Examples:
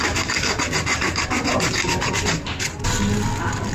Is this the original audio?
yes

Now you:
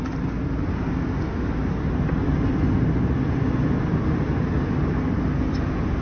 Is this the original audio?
yes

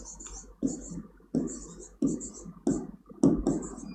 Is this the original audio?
yes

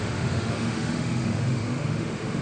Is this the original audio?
no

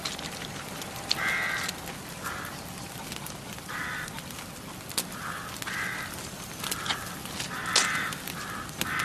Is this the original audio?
yes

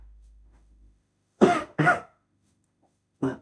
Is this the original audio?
no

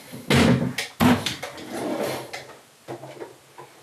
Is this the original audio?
yes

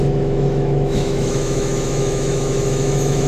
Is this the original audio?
no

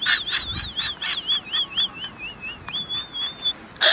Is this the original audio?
yes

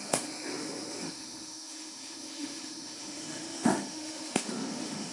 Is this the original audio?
no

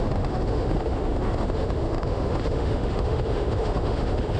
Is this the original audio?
no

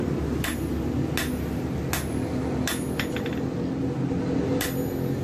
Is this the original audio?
yes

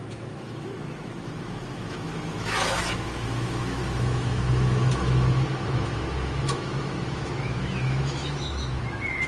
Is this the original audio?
no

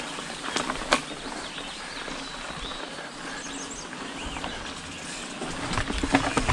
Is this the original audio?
yes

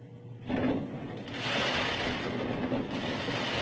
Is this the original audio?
yes